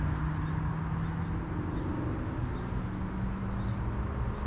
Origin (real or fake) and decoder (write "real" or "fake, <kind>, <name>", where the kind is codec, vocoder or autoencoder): real